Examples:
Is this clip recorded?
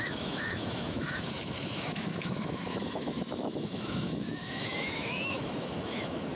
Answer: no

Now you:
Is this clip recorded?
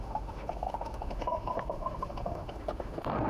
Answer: no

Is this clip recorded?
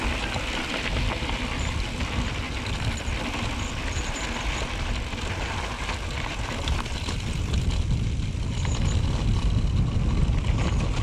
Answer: yes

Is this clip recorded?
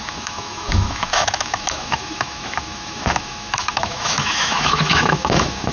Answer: no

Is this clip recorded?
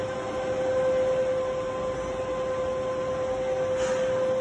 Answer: yes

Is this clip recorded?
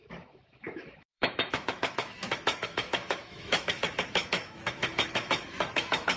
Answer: no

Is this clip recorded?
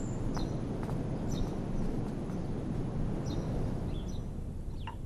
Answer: yes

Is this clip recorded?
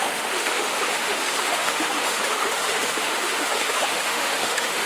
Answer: no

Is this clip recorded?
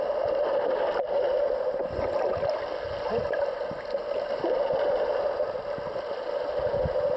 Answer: yes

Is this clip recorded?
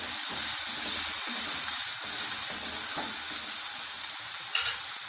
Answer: yes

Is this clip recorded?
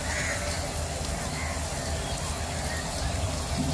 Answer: yes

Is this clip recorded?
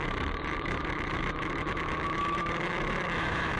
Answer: no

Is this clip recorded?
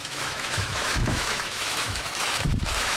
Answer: no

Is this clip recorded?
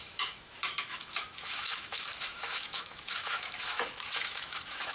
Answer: no